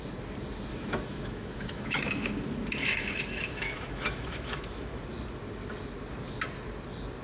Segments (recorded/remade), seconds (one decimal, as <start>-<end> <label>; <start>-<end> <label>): 0.0-0.7 recorded; 0.7-5.0 remade; 5.0-7.2 recorded